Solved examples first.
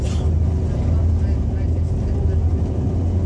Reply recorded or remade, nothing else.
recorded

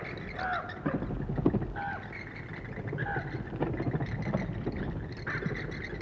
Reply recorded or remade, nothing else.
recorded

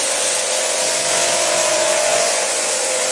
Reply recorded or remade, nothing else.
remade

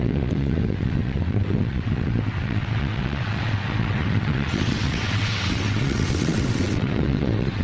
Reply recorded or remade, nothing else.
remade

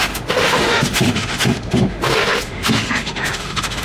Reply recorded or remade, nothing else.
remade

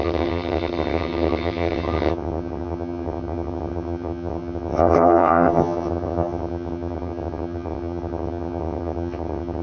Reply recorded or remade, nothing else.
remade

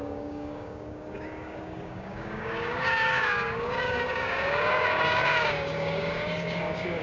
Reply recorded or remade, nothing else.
remade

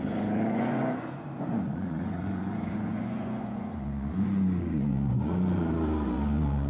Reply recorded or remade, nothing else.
remade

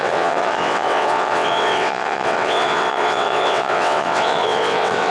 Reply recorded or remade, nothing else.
remade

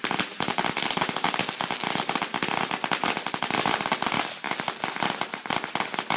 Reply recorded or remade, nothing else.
recorded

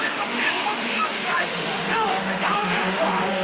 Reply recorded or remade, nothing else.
remade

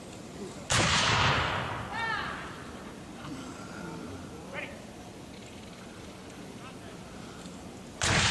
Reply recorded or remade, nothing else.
remade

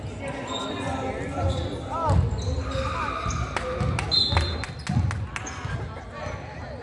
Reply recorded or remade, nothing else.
recorded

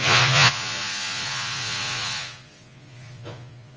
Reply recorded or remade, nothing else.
remade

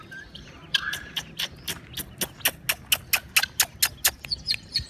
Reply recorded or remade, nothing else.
recorded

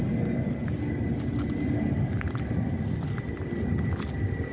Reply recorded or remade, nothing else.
recorded